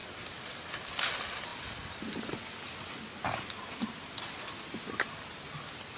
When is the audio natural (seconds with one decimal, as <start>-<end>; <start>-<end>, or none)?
0.0-6.0